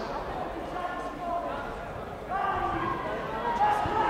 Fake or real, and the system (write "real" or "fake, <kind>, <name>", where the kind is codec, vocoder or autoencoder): real